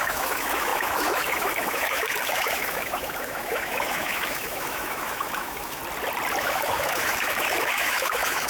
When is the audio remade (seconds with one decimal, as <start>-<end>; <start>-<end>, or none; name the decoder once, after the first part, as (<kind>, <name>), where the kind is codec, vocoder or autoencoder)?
0.0-5.8 (autoencoder, DAC-VAE); 6.4-8.5